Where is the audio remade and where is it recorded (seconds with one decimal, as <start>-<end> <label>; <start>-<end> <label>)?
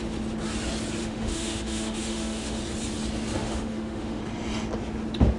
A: 0.0-1.0 recorded; 1.0-2.6 remade; 2.6-3.4 recorded; 3.4-4.2 remade; 4.2-5.4 recorded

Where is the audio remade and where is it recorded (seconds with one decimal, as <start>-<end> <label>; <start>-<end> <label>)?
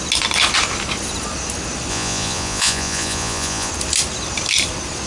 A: 0.0-1.9 recorded; 1.9-3.7 remade; 3.7-5.1 recorded